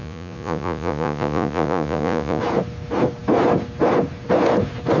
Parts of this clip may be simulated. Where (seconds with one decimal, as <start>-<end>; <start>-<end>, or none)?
0.0-2.4